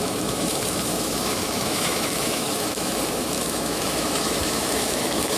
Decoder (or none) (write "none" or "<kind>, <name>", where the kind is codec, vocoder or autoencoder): autoencoder, DAC-VAE